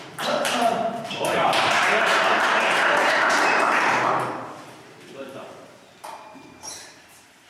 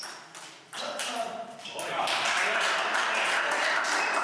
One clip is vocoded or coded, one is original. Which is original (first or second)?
second